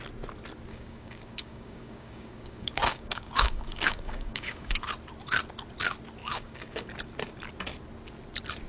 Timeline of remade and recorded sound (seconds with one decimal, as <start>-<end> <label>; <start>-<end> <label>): 0.0-0.7 recorded; 0.7-4.8 remade; 4.8-6.2 recorded; 6.2-6.8 remade; 6.8-8.7 recorded